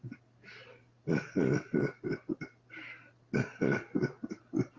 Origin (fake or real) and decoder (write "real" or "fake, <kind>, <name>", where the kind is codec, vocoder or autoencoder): real